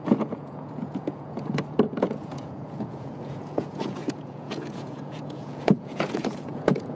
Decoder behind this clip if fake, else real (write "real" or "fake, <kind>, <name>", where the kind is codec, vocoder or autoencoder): fake, vocoder, Vocos